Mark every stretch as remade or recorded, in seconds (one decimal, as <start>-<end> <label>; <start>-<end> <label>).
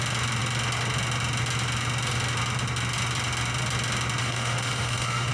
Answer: 0.0-4.2 recorded; 4.2-5.3 remade